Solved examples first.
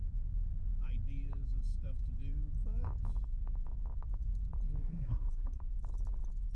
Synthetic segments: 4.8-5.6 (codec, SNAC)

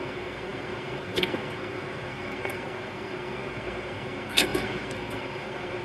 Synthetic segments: 0.0-5.8 (codec, SNAC)

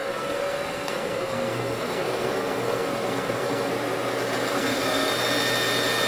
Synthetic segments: 0.0-3.7 (codec, SNAC); 4.5-5.1

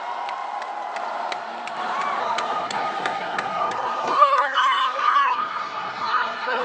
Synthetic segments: 2.2-6.6 (codec, SNAC)

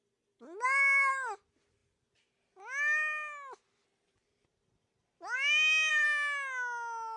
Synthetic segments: none